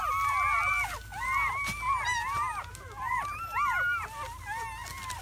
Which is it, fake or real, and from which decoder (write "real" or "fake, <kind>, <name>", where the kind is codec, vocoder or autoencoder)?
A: real